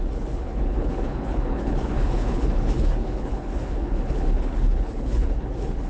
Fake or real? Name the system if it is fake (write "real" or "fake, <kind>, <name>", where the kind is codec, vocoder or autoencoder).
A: fake, codec, HILCodec